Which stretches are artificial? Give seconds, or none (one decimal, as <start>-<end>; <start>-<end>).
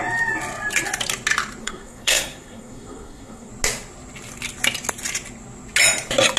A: 1.6-3.5